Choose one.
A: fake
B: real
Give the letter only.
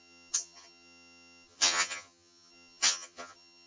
A